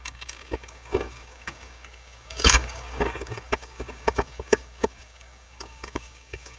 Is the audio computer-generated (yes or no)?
yes